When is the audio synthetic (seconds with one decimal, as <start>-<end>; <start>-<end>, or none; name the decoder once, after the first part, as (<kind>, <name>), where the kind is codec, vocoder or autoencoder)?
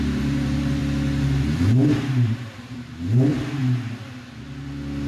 0.0-0.8 (vocoder, BigVGAN v2); 2.0-3.6